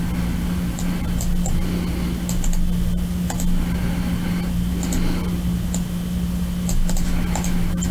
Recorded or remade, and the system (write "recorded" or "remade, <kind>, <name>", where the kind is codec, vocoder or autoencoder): recorded